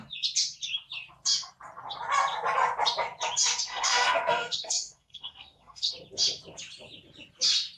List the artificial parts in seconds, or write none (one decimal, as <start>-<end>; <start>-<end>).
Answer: 3.7-5.9

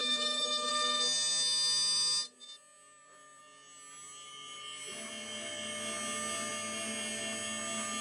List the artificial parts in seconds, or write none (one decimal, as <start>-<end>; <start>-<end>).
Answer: 0.0-0.7

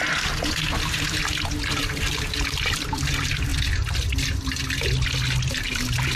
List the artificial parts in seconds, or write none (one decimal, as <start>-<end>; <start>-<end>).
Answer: 0.0-3.5; 5.5-6.2

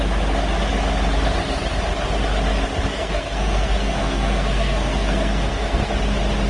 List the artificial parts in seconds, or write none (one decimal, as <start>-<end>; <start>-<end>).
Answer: 2.9-5.9

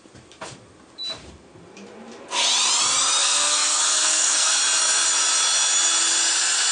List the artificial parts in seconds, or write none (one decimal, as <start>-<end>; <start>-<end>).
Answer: 3.2-4.6

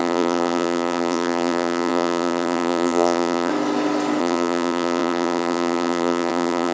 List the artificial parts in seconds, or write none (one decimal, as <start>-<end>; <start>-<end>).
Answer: 0.0-3.5; 4.2-6.7

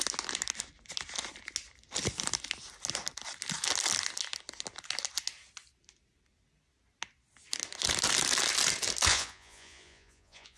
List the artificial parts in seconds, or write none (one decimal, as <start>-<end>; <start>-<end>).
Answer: 9.1-10.6